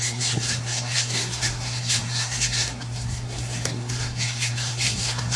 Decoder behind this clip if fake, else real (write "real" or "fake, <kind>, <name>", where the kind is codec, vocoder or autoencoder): fake, codec, SNAC